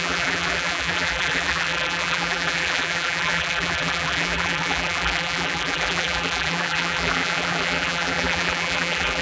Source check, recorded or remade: remade